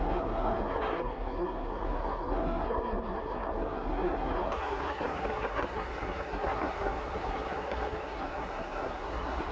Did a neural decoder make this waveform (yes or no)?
yes